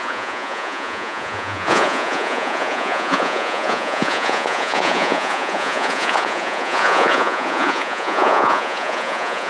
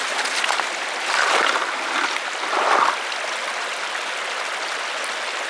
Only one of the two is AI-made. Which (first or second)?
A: first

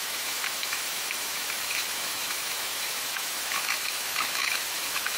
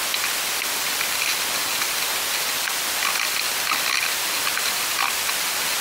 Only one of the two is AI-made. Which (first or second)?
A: first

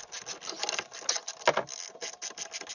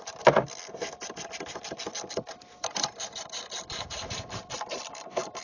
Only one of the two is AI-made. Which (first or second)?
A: second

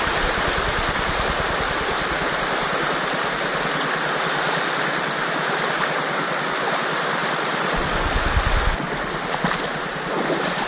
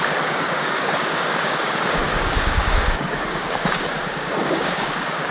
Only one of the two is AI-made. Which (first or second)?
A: second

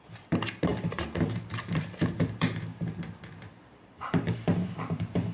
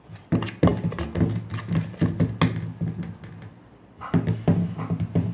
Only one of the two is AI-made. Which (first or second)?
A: first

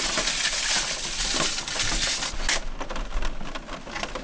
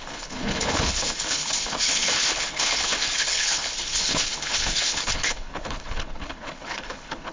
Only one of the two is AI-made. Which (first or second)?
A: second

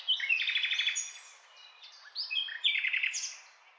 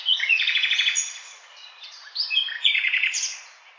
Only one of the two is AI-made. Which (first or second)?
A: second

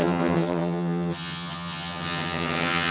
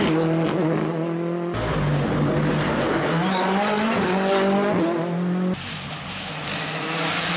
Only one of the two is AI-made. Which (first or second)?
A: first